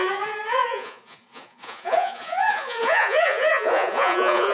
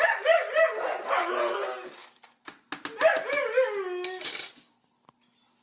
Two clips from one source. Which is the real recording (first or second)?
second